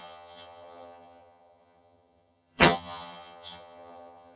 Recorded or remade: remade